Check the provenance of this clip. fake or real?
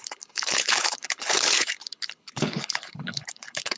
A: fake